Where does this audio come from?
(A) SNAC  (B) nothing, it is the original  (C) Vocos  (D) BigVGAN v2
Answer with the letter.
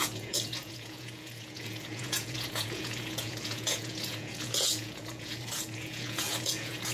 C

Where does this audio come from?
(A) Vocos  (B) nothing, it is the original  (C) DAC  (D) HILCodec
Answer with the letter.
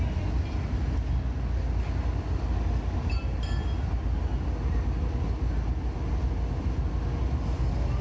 B